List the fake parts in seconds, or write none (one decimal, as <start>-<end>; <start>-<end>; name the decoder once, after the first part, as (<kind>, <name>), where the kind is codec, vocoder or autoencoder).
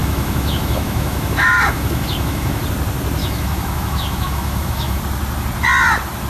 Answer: 0.0-2.6 (autoencoder, DAC-VAE); 3.2-5.0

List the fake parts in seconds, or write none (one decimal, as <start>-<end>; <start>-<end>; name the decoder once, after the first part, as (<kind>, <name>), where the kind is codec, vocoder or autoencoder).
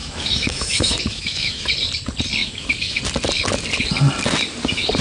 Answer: 0.0-1.6 (autoencoder, DAC-VAE); 2.4-3.0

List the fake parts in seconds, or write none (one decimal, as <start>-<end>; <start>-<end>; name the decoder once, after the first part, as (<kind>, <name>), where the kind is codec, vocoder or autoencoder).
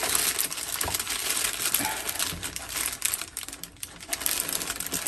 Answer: none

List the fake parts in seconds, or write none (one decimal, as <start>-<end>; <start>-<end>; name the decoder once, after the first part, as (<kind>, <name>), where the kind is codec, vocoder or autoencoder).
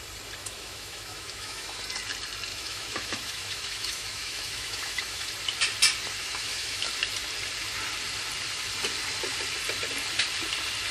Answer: 0.4-1.8 (autoencoder, DAC-VAE); 2.5-5.3; 6.2-6.9